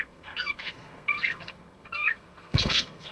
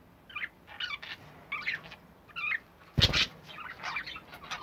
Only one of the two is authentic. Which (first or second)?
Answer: second